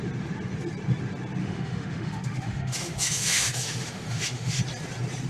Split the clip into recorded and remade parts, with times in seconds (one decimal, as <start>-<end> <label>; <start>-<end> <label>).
0.0-1.4 recorded; 1.4-4.6 remade; 4.6-5.3 recorded